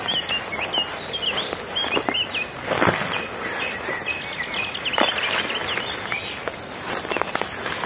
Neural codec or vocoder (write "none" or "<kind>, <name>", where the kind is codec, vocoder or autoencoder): none